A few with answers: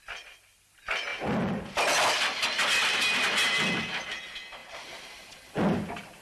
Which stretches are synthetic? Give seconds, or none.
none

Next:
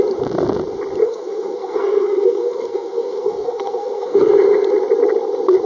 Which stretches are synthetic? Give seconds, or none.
1.0-4.3 (codec, SNAC)

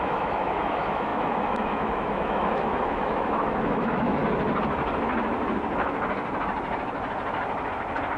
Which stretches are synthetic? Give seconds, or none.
0.0-4.2 (autoencoder, DAC-VAE)

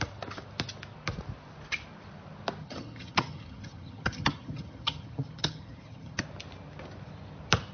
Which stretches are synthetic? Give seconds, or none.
2.6-6.2 (vocoder, HiFi-GAN)

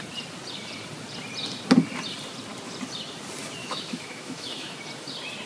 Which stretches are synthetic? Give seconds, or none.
3.6-4.8 (autoencoder, DAC-VAE)

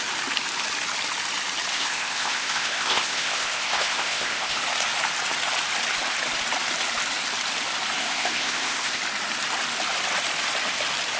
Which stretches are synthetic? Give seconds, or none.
1.7-4.6 (codec, ZipCodec); 8.0-9.0